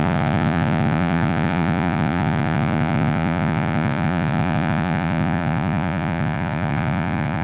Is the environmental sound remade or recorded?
remade